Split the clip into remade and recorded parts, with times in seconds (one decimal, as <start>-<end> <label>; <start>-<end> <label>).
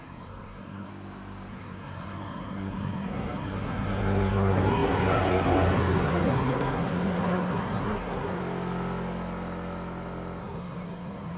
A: 0.0-0.9 remade; 0.9-1.5 recorded; 1.5-8.4 remade; 8.4-10.4 recorded; 10.4-11.4 remade